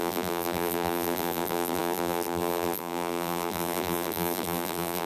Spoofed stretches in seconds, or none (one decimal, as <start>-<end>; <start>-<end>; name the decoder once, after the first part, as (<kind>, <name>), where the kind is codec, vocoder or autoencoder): 0.0-5.1 (vocoder, BigVGAN v2)